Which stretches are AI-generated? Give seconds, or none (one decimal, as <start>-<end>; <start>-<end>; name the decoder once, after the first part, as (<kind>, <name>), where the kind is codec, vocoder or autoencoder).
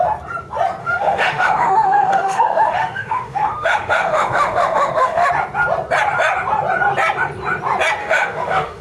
0.8-5.3 (autoencoder, DAC-VAE); 8.0-8.8